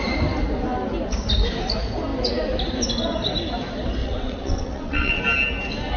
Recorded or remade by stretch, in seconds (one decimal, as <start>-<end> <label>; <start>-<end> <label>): 0.0-4.0 recorded; 4.0-5.2 remade; 5.2-6.0 recorded